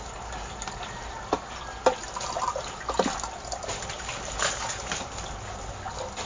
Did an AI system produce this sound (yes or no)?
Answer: no